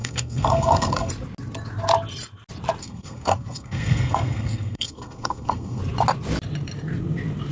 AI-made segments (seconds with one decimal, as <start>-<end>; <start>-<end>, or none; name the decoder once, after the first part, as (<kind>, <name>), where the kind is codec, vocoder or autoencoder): 0.0-1.1 (codec, SNAC); 2.8-5.8